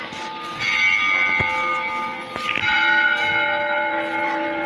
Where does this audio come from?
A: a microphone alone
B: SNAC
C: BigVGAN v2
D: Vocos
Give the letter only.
A